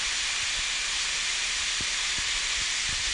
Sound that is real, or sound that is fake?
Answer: real